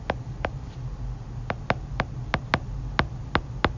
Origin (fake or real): real